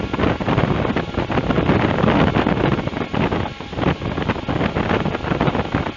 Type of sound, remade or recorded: recorded